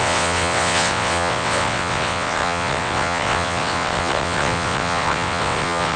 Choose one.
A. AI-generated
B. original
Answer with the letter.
A